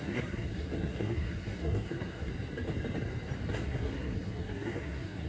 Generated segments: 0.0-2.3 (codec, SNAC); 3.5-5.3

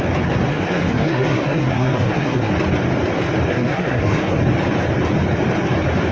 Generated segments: 0.5-2.5 (codec, SNAC); 3.5-4.4

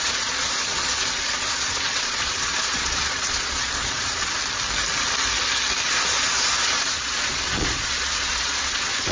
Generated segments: 0.0-4.4 (vocoder, Vocos); 5.9-9.1

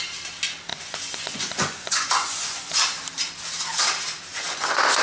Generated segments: 0.7-2.7 (vocoder, Vocos); 4.3-5.0

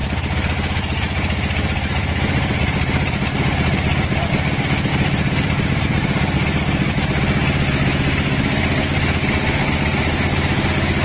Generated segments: 0.0-4.3 (vocoder, BigVGAN v2); 4.9-6.9